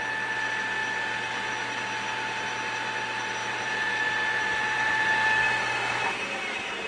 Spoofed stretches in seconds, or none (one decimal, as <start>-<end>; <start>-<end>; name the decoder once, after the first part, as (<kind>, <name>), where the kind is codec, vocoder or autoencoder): 3.4-5.1 (vocoder, BigVGAN v2)